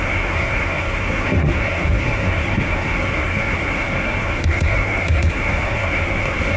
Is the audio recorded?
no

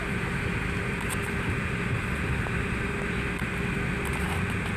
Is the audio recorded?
yes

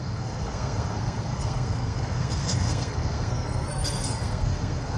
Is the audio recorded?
no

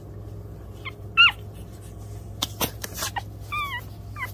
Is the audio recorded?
yes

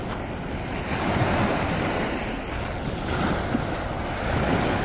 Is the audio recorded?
yes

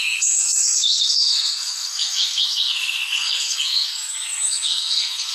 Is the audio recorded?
no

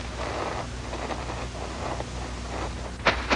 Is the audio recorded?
yes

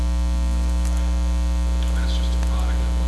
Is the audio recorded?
yes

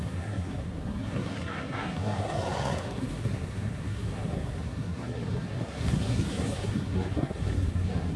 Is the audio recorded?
no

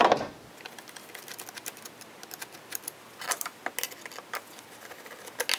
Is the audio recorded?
yes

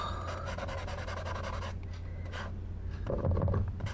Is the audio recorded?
yes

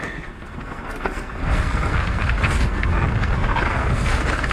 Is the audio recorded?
no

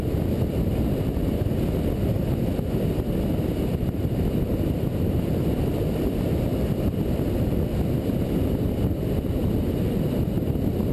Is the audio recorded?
yes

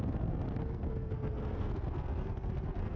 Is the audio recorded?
no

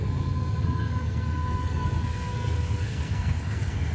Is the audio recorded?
no